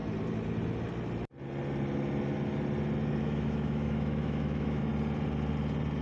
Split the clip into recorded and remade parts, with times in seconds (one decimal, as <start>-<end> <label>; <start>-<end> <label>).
0.0-3.2 recorded; 3.2-4.9 remade; 4.9-6.0 recorded

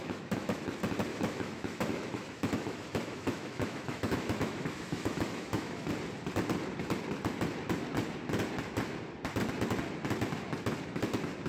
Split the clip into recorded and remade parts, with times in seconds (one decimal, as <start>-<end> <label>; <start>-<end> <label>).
0.0-0.6 remade; 0.6-1.1 recorded; 1.1-5.9 remade; 5.9-11.5 recorded